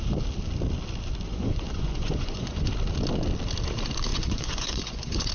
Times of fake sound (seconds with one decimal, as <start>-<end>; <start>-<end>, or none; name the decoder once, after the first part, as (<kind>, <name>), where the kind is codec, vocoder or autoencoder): 1.3-2.7 (vocoder, Vocos); 4.1-5.3